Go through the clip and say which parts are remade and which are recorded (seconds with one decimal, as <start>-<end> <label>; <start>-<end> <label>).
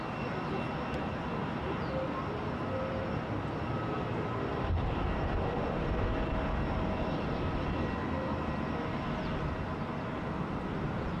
0.0-11.2 recorded